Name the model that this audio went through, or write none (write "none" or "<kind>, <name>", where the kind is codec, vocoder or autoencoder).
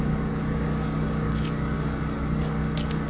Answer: codec, DAC